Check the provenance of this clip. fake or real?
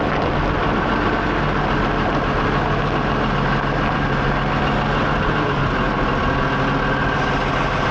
real